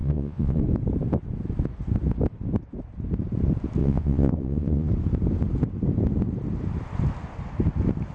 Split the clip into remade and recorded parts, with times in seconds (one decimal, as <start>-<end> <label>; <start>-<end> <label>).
0.0-0.6 remade; 0.6-3.8 recorded; 3.8-4.9 remade; 4.9-8.1 recorded